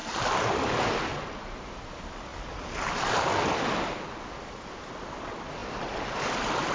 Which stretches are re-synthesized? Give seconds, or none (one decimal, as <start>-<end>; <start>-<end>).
none